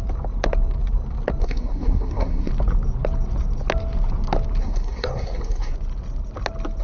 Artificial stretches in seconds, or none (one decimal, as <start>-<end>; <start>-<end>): 1.4-2.5; 4.6-5.7

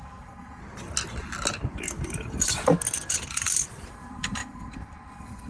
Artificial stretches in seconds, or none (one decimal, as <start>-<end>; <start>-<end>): 0.0-0.6; 3.9-5.5